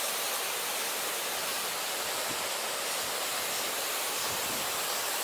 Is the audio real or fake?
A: real